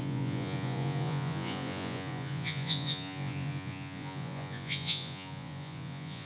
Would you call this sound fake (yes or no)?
yes